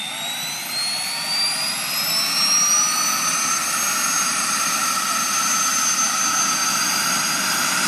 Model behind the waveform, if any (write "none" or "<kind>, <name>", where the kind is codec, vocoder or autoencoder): none